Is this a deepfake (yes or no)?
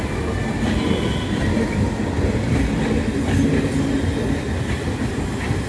no